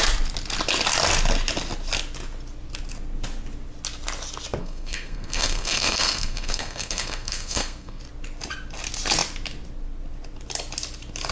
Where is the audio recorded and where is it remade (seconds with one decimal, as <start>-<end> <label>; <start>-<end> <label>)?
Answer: 0.0-4.6 recorded; 4.6-8.0 remade; 8.0-11.3 recorded